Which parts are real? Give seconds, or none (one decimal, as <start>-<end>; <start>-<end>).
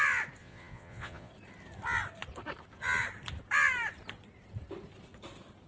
0.0-0.4; 1.3-5.7